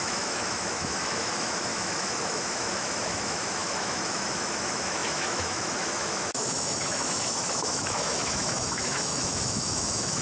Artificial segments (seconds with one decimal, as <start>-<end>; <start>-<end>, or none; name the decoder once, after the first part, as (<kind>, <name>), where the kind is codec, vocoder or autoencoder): 0.0-10.2 (autoencoder, DAC-VAE)